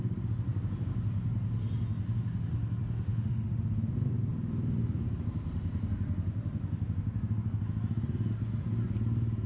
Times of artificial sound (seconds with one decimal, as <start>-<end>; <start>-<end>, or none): 3.1-3.9